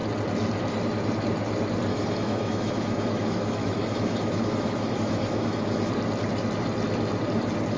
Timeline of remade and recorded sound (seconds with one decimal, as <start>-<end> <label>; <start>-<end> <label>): 0.0-1.9 recorded; 1.9-5.9 remade; 5.9-7.8 recorded